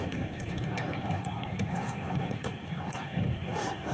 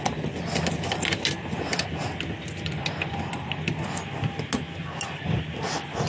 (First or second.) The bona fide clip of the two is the second